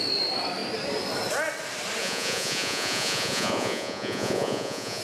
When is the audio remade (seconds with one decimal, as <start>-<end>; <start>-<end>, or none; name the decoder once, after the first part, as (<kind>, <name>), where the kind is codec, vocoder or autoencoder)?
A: 2.0-5.0 (vocoder, Vocos)